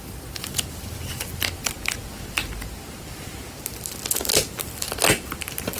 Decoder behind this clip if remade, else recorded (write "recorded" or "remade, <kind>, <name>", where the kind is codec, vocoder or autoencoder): recorded